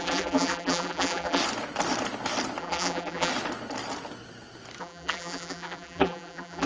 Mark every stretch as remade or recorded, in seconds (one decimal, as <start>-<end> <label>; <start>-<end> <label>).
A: 0.0-1.4 remade; 1.4-2.6 recorded; 2.6-3.3 remade; 3.3-4.8 recorded; 4.8-6.7 remade